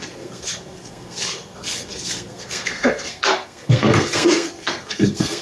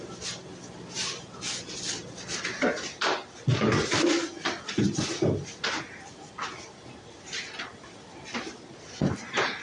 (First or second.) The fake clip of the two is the first